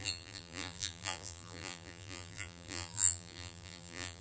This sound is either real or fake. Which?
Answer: fake